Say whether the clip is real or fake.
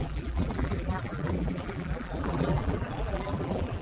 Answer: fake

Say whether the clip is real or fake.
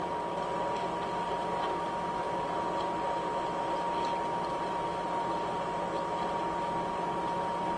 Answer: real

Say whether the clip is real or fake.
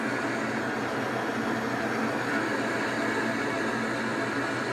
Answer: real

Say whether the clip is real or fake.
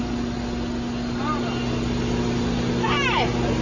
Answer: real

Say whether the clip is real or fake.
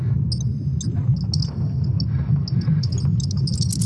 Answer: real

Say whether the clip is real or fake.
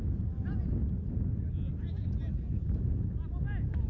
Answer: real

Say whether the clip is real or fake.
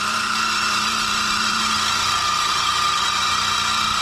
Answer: fake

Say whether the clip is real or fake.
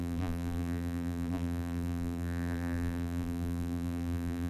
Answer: fake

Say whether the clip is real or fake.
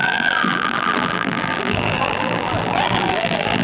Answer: fake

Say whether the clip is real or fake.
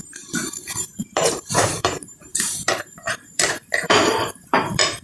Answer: fake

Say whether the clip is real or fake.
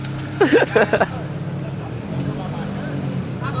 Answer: real